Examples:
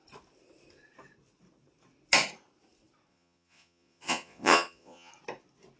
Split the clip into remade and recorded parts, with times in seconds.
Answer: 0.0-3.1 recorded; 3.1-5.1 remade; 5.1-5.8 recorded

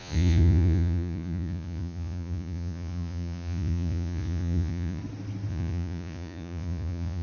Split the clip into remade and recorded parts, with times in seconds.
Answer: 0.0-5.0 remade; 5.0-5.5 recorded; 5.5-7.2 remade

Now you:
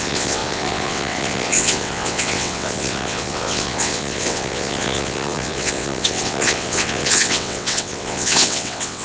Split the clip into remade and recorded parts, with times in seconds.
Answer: 0.0-9.0 remade

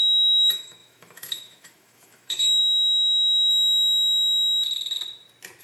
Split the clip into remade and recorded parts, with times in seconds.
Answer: 0.0-3.5 remade; 3.5-5.6 recorded

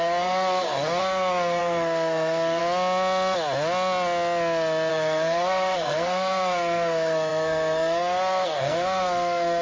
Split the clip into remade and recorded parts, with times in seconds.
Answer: 0.0-2.6 remade; 2.6-4.9 recorded; 4.9-9.6 remade

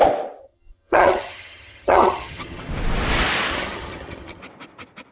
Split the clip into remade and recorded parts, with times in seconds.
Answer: 0.0-0.4 recorded; 0.4-2.7 remade; 2.7-3.5 recorded; 3.5-4.4 remade; 4.4-5.1 recorded